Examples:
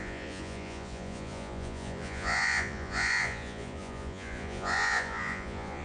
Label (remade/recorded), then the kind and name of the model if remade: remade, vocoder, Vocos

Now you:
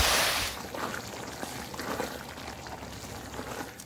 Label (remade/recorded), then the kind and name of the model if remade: recorded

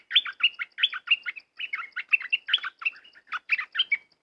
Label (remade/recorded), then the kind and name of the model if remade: recorded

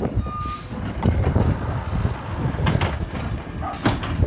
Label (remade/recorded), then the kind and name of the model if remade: recorded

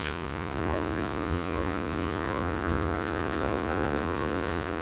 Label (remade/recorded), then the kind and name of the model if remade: remade, vocoder, Vocos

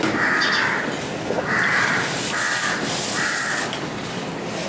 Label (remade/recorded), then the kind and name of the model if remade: recorded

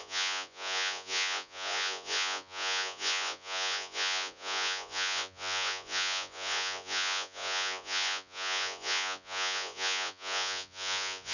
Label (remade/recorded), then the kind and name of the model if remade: remade, vocoder, Vocos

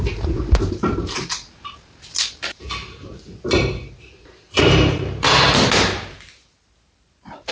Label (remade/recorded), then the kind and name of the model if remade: remade, vocoder, BigVGAN v2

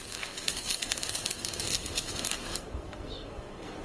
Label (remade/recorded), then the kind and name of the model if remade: remade, codec, SNAC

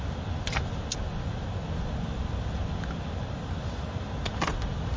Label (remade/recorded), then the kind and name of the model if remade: recorded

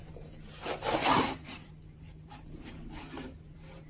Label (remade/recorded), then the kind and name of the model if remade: remade, vocoder, BigVGAN v2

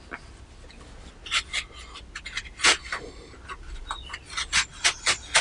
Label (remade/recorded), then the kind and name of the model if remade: recorded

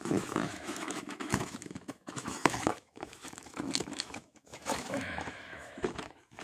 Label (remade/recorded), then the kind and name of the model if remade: remade, autoencoder, DAC-VAE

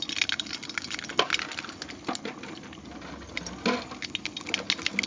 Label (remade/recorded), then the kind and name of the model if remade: recorded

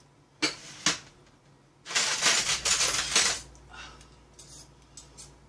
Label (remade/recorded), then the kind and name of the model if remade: recorded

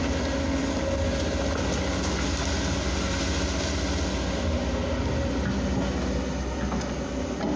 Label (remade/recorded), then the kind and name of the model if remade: recorded